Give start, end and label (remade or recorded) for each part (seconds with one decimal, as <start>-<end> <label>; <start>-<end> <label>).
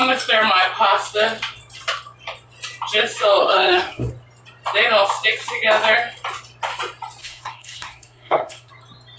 0.0-3.4 recorded; 3.4-4.1 remade; 4.1-7.2 recorded; 7.2-8.7 remade; 8.7-9.2 recorded